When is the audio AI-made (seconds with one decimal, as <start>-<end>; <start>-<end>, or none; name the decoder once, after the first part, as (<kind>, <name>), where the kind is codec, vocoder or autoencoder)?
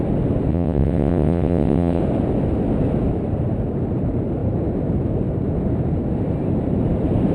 0.5-2.0 (vocoder, WaveNeXt)